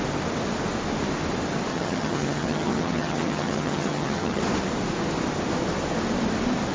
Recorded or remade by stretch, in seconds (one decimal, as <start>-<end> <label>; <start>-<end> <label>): 0.0-1.7 recorded; 1.7-4.4 remade; 4.4-6.7 recorded